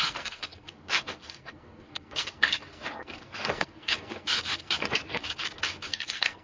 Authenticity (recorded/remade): remade